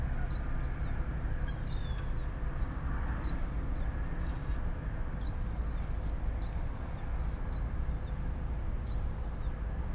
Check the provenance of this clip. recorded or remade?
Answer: recorded